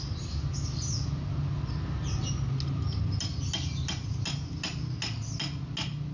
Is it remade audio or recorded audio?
recorded